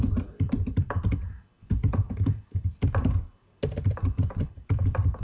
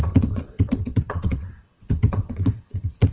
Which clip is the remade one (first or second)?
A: second